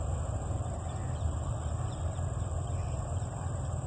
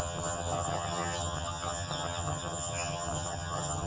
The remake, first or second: second